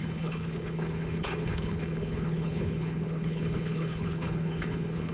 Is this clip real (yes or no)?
no